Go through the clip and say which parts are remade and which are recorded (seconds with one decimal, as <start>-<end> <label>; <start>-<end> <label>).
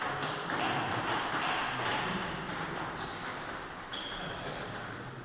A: 0.0-1.9 recorded; 1.9-2.4 remade; 2.4-5.2 recorded